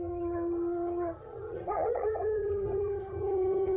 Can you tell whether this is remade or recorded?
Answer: remade